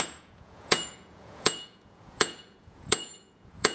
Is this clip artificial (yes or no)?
yes